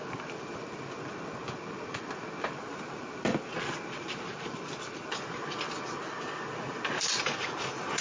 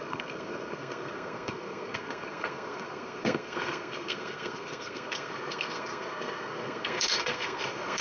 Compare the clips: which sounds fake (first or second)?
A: second